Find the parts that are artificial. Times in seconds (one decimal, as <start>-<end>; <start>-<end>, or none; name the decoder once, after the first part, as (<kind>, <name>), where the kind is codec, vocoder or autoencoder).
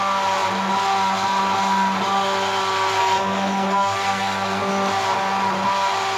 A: 3.0-4.7 (codec, SNAC)